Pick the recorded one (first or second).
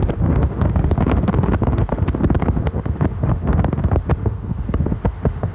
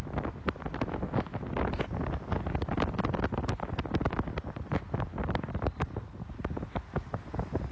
second